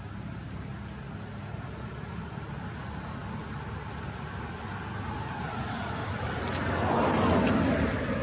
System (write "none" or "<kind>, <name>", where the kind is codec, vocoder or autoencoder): none